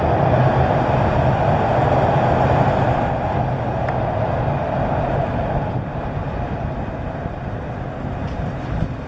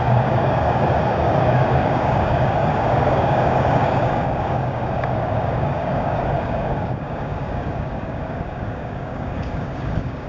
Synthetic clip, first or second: second